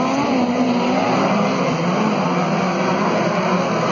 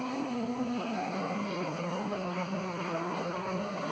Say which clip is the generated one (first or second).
second